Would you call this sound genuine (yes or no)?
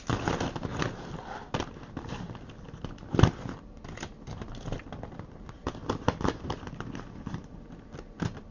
yes